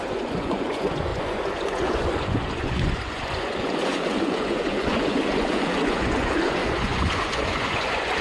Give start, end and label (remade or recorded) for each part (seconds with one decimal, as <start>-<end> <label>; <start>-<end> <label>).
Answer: 0.0-8.2 remade